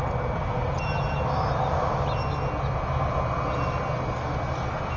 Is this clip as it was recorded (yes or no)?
yes